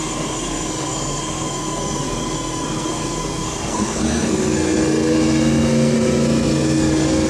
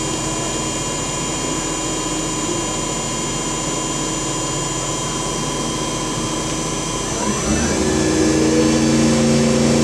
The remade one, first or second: first